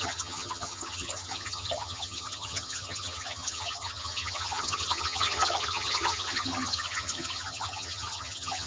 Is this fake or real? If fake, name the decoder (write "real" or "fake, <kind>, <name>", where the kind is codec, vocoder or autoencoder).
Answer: fake, vocoder, HiFi-GAN